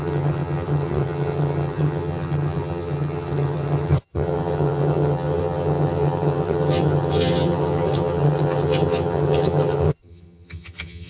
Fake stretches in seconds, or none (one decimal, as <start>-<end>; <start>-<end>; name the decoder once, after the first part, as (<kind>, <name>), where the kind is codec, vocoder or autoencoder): 0.0-11.1 (vocoder, HiFi-GAN)